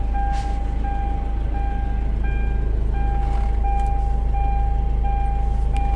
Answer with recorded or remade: recorded